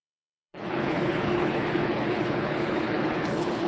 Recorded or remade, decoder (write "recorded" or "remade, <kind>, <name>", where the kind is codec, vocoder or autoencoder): remade, codec, HILCodec